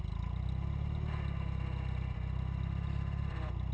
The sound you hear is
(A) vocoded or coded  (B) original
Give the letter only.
B